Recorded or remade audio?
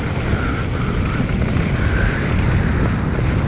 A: recorded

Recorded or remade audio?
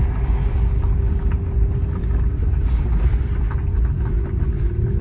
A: recorded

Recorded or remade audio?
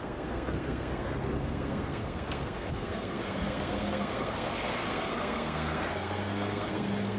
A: remade